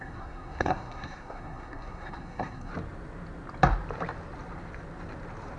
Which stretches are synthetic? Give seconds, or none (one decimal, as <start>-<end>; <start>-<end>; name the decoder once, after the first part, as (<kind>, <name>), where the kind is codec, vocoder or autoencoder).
0.0-2.7 (codec, SNAC)